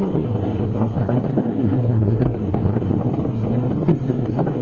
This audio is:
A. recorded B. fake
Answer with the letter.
B